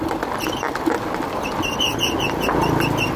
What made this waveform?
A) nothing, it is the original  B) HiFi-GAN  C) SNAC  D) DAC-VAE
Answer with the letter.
A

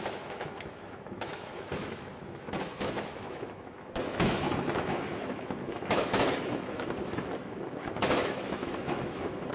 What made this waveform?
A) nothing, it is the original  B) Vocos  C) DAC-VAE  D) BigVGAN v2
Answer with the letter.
C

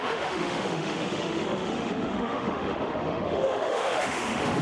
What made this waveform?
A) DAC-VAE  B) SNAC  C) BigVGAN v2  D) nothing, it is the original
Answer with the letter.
A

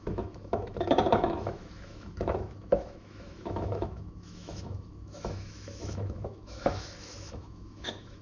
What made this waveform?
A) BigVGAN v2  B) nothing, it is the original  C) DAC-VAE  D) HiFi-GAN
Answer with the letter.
C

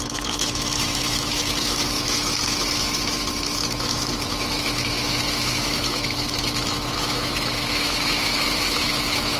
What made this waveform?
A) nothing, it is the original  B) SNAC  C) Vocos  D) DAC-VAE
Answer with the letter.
D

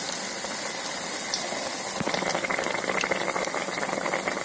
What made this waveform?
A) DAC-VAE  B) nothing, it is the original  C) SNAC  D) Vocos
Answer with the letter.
B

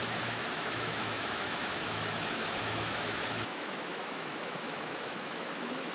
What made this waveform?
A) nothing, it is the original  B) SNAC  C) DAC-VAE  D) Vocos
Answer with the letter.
C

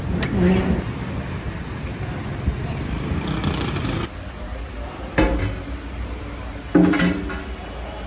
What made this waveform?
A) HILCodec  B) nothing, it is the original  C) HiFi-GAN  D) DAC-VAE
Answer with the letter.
B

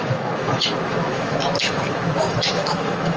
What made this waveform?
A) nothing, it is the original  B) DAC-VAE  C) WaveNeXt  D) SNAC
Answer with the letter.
B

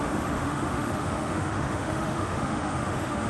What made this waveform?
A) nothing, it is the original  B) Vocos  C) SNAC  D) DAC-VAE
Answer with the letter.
D